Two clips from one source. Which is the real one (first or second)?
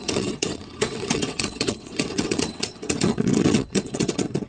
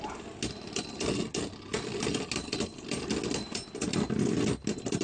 second